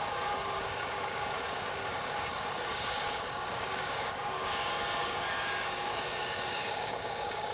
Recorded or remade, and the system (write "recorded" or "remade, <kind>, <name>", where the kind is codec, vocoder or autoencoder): remade, codec, DAC